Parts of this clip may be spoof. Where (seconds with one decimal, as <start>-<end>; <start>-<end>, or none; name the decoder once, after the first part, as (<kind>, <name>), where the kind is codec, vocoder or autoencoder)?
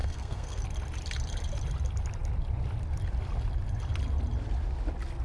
0.0-0.6 (codec, SNAC)